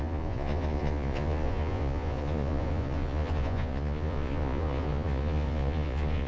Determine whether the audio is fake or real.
fake